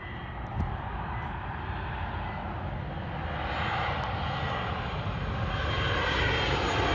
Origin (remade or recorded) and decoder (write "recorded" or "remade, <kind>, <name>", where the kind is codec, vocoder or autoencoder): recorded